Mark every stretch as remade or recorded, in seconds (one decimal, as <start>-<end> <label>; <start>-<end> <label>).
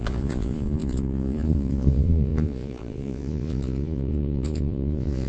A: 0.0-5.3 remade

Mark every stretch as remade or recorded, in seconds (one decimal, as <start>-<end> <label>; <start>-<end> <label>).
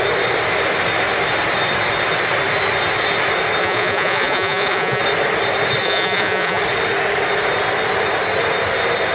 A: 0.0-3.6 recorded; 3.6-5.0 remade; 5.0-5.8 recorded; 5.8-6.6 remade; 6.6-9.1 recorded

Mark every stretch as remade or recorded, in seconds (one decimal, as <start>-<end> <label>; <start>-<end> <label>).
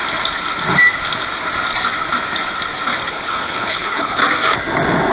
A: 0.0-3.1 recorded; 3.1-4.2 remade; 4.2-5.1 recorded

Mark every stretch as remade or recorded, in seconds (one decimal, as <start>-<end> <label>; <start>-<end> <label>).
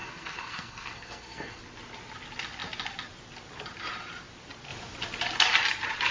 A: 0.0-1.6 remade; 1.6-6.1 recorded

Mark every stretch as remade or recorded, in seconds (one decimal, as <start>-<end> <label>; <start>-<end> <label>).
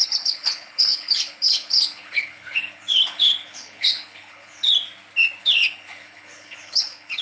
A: 0.0-4.7 remade; 4.7-5.4 recorded; 5.4-7.2 remade